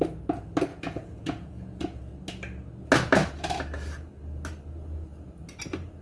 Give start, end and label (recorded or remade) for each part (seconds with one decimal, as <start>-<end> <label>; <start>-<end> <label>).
0.0-0.7 recorded; 0.7-2.0 remade; 2.0-6.0 recorded